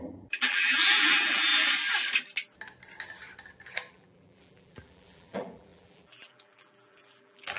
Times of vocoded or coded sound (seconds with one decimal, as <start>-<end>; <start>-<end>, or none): 0.0-1.5; 3.9-7.6